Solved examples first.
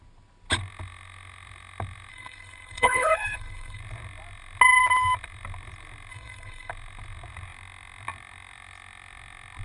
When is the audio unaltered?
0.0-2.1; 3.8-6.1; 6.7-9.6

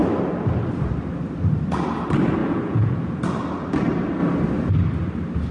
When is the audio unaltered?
0.0-2.4; 3.2-5.5

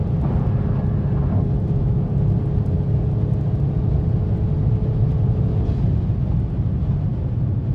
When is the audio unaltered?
0.0-7.7

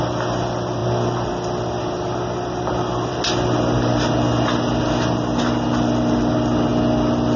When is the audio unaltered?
0.0-7.4